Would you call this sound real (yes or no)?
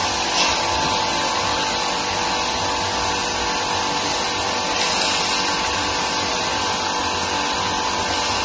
yes